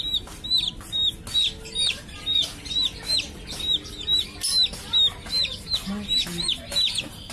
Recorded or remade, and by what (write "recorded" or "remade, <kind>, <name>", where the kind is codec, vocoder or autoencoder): recorded